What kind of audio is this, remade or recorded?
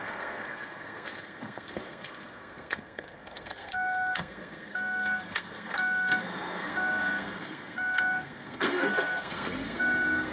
remade